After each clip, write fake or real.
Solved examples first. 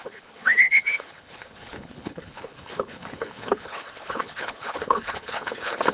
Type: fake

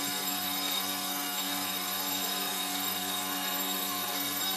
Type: fake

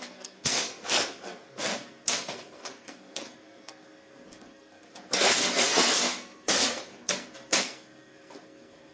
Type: fake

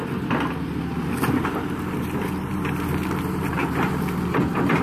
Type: real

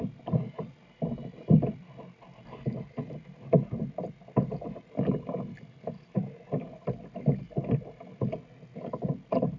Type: real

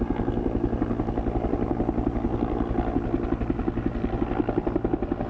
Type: real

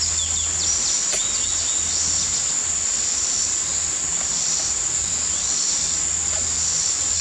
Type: real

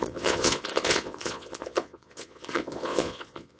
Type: fake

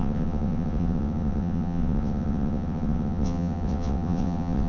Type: fake